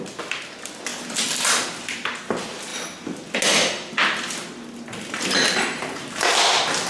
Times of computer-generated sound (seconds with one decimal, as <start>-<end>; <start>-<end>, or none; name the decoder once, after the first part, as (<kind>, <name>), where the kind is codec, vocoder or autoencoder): 0.9-2.2 (vocoder, BigVGAN v2)